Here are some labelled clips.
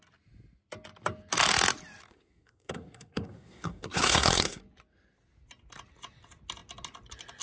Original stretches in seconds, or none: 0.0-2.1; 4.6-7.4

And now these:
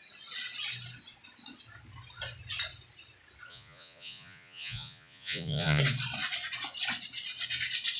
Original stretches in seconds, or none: 0.0-3.5; 5.8-8.0

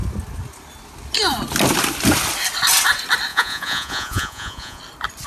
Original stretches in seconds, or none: 0.0-3.3; 4.8-5.3

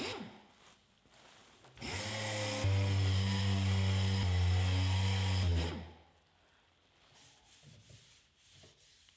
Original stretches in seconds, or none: 0.0-9.2

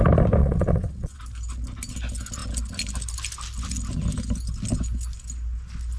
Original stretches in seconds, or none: 0.0-0.4; 1.2-6.0